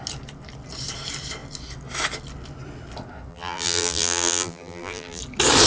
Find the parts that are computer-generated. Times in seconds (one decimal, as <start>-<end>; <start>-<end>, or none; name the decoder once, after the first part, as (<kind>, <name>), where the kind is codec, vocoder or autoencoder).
3.3-5.2 (vocoder, BigVGAN v2)

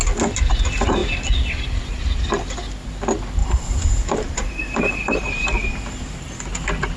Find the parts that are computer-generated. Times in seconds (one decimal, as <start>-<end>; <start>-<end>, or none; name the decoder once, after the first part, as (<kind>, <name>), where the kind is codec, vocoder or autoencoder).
3.4-6.2 (vocoder, BigVGAN v2)